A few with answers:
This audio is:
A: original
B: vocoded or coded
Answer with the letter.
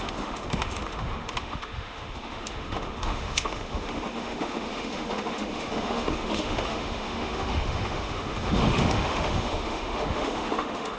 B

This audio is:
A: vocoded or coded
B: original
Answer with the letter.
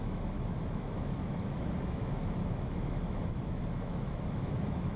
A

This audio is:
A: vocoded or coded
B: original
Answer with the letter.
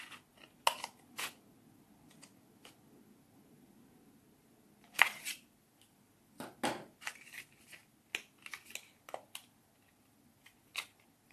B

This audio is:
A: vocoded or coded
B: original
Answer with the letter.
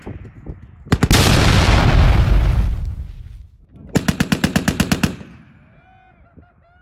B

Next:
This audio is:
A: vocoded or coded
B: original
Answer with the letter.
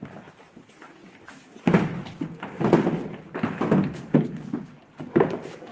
B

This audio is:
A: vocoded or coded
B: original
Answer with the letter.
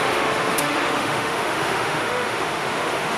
A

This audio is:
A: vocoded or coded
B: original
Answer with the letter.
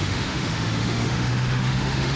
A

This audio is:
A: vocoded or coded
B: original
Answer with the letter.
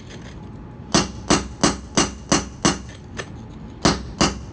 B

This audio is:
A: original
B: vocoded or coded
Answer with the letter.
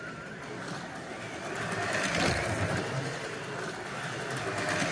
A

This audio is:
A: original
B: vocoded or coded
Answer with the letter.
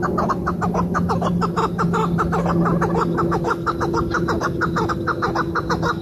A